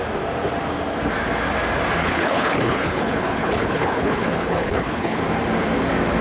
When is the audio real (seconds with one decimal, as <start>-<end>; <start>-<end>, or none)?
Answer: 0.0-2.0; 5.2-6.2